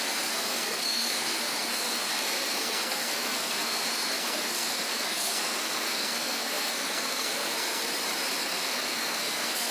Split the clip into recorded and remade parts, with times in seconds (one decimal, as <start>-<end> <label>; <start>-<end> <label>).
0.0-7.8 remade; 7.8-8.4 recorded; 8.4-9.7 remade

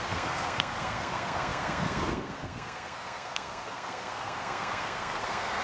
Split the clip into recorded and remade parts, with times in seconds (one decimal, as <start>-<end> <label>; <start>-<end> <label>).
0.0-5.6 remade

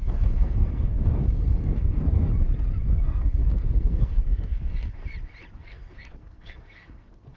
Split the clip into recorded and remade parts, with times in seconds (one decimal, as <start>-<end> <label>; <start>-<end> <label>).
0.0-2.3 remade; 2.3-3.0 recorded; 3.0-5.0 remade; 5.0-5.6 recorded; 5.6-7.4 remade

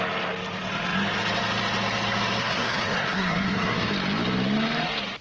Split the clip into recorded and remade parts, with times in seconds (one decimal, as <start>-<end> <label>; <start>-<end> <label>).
0.0-2.4 recorded; 2.4-3.9 remade; 3.9-5.2 recorded

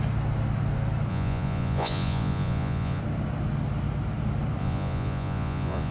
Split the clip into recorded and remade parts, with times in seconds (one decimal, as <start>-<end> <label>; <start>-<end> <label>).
0.0-1.1 recorded; 1.1-3.0 remade; 3.0-4.6 recorded; 4.6-5.9 remade

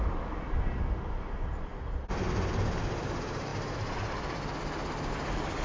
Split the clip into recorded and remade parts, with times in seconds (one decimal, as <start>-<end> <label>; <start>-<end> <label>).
0.0-5.6 recorded

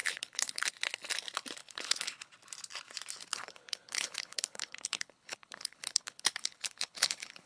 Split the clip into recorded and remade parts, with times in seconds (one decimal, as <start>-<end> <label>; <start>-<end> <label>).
0.0-0.7 remade; 0.7-1.6 recorded; 1.6-2.3 remade; 2.3-3.3 recorded; 3.3-7.5 remade

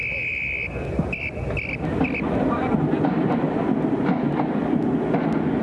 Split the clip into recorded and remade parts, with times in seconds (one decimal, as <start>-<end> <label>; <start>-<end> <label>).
0.0-3.3 remade; 3.3-5.6 recorded